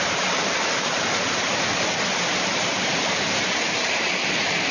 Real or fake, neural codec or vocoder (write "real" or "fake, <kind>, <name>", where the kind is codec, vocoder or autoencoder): real